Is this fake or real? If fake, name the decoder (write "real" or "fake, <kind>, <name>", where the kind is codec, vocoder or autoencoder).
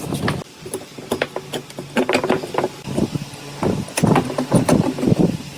real